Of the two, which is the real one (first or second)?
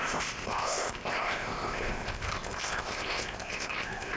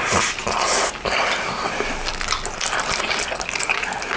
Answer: second